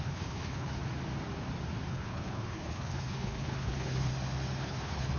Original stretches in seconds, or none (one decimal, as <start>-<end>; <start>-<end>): 0.8-1.9; 4.1-4.6

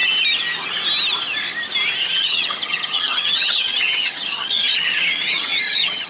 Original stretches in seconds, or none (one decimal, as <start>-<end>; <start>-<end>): 0.0-2.0

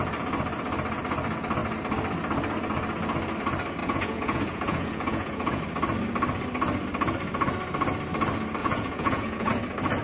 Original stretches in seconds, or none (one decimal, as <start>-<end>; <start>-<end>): 0.0-3.8; 5.6-8.6; 9.5-10.0

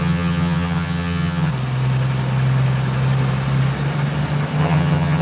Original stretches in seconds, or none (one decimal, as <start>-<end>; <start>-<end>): 1.5-4.6

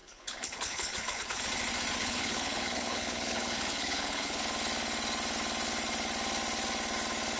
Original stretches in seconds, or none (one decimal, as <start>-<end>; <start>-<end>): 1.4-2.0; 4.4-7.4

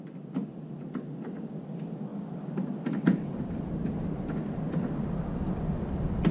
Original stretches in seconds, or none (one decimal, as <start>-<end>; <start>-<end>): 0.0-6.3